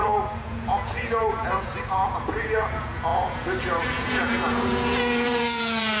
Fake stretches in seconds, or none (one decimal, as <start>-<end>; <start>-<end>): 0.0-6.0